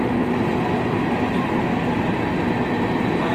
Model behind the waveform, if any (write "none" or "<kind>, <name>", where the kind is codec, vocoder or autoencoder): none